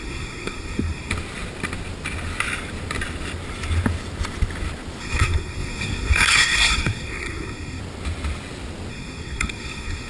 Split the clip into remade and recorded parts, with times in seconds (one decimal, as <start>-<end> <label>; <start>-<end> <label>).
0.0-1.1 remade; 1.1-5.0 recorded; 5.0-7.8 remade; 7.8-8.9 recorded; 8.9-10.1 remade